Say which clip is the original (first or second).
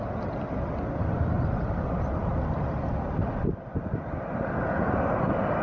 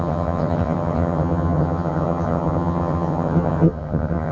first